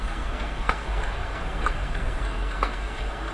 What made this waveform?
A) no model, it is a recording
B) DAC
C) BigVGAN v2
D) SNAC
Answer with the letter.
D